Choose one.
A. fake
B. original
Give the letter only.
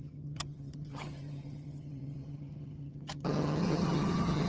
A